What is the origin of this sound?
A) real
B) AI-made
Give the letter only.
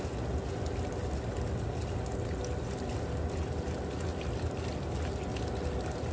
A